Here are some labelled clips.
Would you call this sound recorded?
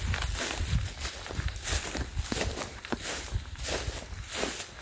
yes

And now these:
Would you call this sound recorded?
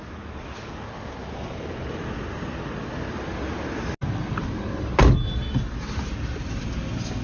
yes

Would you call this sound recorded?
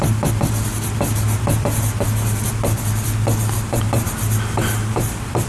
no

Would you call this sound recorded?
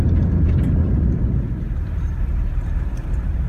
no